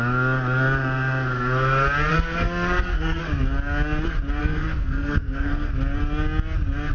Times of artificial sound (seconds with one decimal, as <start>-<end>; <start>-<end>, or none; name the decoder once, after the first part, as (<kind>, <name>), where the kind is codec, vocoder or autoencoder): 2.1-3.2 (codec, SNAC); 4.4-5.7